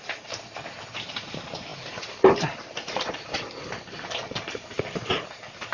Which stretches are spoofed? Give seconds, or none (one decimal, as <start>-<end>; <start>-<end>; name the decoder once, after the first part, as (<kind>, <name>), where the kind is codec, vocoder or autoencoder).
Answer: 0.0-5.7 (vocoder, BigVGAN v2)